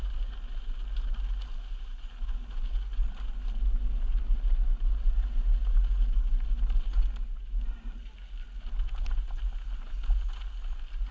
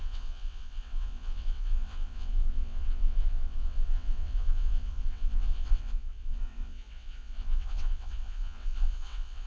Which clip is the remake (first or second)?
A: second